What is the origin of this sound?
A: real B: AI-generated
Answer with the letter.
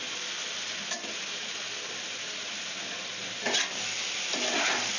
B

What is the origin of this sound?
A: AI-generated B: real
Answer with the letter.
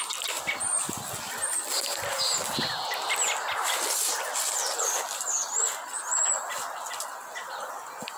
B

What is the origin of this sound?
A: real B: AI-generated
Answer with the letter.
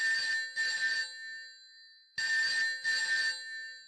A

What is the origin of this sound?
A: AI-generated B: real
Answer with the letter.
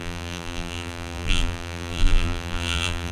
A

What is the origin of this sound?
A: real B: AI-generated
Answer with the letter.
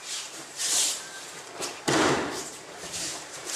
B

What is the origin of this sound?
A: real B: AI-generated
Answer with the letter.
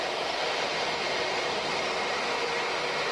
B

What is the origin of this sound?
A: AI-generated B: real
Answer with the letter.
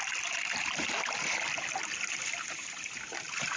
A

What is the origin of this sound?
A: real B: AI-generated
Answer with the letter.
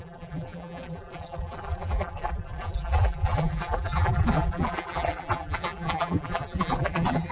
B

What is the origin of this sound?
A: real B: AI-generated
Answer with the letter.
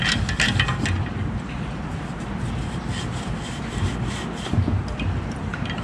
B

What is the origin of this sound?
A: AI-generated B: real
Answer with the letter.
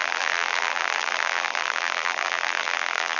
A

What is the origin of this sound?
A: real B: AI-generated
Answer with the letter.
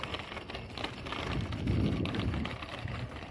A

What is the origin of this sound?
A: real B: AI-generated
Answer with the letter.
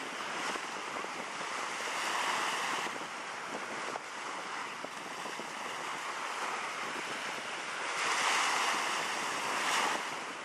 A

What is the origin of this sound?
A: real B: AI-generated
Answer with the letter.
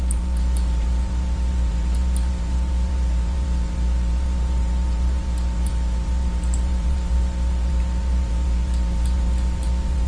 B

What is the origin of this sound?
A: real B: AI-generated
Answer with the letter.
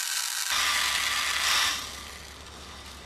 A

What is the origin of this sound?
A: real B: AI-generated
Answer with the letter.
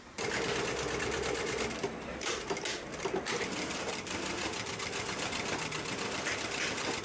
B